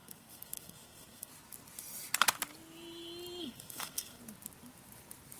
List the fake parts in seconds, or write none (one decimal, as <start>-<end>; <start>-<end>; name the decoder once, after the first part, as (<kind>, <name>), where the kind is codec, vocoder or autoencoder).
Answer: 0.0-1.3 (codec, SNAC); 3.4-4.2